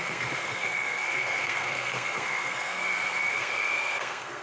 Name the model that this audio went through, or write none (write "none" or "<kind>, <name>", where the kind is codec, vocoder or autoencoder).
codec, SNAC